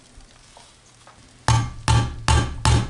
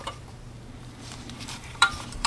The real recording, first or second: first